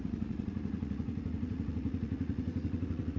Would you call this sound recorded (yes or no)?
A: no